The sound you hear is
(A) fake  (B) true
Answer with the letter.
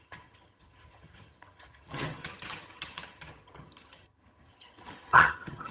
A